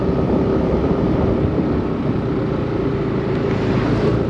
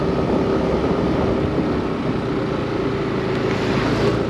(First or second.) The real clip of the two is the second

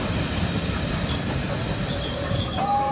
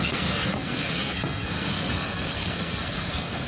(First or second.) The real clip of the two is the first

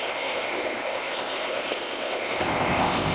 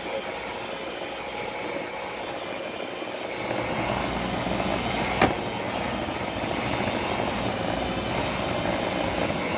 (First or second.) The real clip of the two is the second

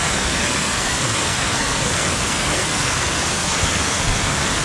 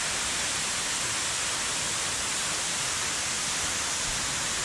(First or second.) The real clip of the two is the second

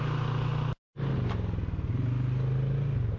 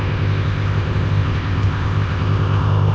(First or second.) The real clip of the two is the first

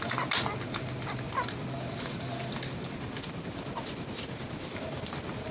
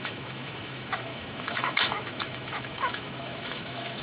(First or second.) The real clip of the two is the first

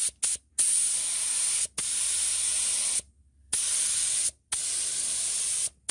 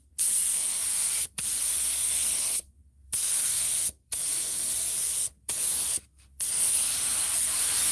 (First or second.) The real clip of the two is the first